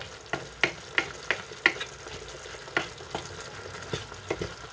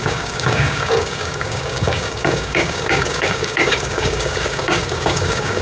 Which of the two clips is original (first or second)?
first